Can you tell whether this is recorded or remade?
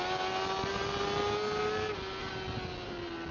recorded